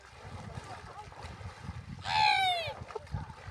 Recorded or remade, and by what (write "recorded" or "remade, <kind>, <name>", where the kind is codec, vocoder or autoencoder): recorded